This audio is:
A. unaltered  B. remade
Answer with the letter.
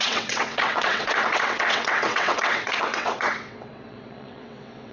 B